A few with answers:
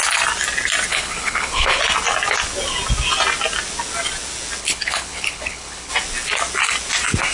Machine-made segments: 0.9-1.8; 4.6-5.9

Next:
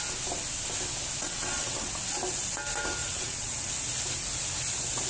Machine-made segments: 1.2-2.0; 3.0-3.7